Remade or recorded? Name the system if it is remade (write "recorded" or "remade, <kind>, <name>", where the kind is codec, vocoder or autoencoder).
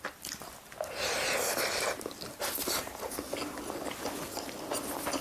recorded